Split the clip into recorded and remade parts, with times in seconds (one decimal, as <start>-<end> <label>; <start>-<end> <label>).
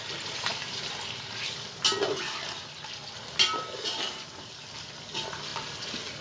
0.0-6.2 recorded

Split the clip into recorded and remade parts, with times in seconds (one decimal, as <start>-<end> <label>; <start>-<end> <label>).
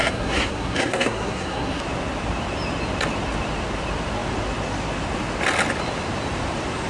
0.0-1.8 remade; 1.8-6.9 recorded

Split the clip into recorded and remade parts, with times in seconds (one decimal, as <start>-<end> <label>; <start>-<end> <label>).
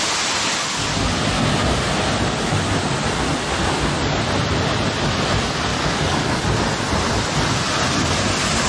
0.0-5.7 recorded; 5.7-6.4 remade; 6.4-8.7 recorded